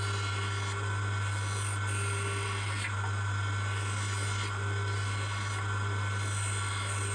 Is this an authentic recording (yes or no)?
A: yes